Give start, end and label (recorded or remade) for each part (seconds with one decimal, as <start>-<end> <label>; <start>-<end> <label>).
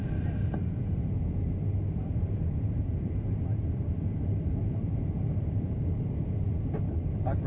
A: 0.0-1.8 recorded; 1.8-6.3 remade; 6.3-7.5 recorded